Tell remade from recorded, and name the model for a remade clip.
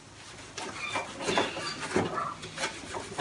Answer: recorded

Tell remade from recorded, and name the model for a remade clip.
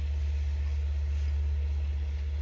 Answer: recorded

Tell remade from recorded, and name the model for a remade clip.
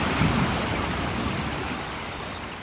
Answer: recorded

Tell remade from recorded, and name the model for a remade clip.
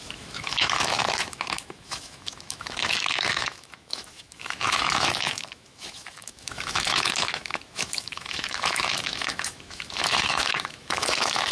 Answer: remade, autoencoder, DAC-VAE